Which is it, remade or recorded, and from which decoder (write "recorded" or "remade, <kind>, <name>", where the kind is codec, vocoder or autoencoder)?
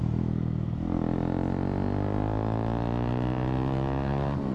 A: recorded